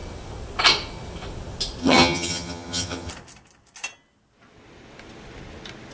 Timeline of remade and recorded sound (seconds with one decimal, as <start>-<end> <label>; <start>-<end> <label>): 0.0-1.8 recorded; 1.8-3.1 remade; 3.1-5.9 recorded